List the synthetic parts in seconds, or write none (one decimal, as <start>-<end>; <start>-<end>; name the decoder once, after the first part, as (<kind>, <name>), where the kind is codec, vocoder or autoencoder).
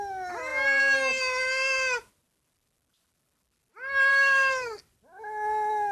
4.1-4.8 (codec, SNAC)